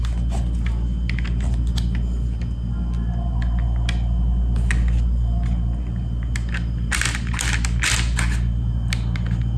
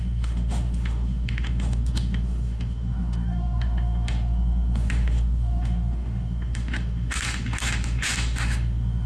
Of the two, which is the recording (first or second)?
first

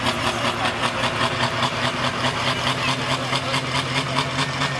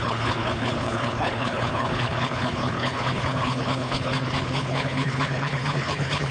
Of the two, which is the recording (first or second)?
first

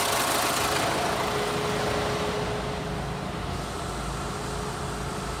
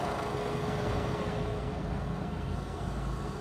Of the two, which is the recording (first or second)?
first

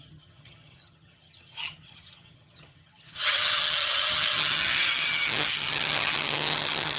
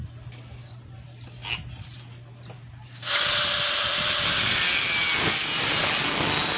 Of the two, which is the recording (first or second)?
second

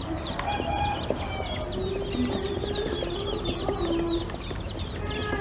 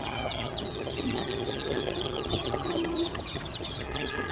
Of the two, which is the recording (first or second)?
first